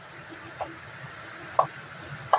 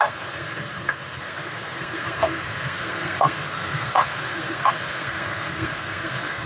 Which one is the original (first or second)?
first